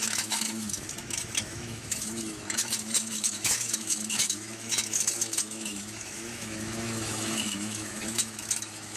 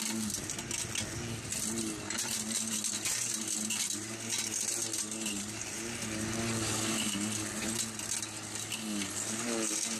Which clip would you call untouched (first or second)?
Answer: second